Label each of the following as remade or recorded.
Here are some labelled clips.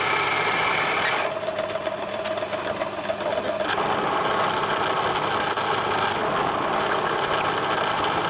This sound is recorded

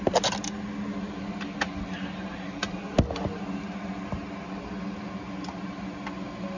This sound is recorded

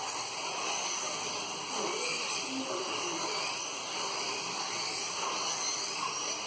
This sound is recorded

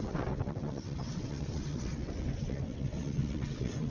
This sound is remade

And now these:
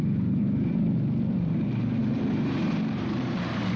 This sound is remade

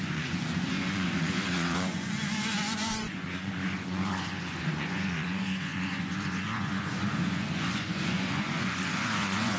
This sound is remade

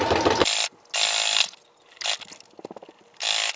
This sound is recorded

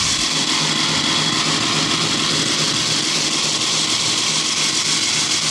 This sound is recorded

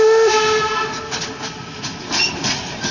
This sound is recorded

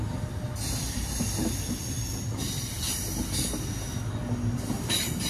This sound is recorded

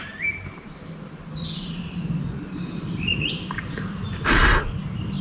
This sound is remade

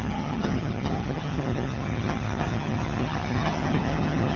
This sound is remade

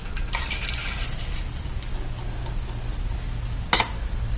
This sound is recorded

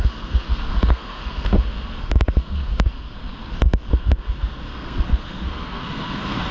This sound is remade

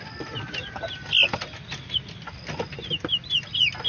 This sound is recorded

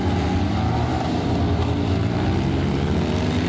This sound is recorded